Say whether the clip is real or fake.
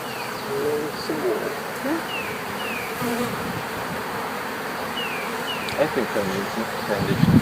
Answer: fake